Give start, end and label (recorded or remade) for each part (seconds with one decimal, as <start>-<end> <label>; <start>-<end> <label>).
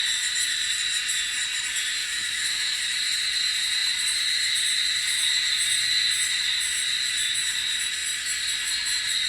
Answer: 0.0-2.0 recorded; 2.0-2.8 remade; 2.8-9.3 recorded